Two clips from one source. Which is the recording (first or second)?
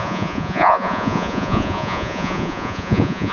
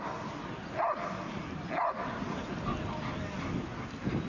second